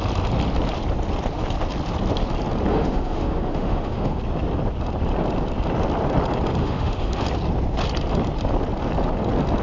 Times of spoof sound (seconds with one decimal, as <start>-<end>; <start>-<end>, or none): 2.7-4.2; 6.6-7.2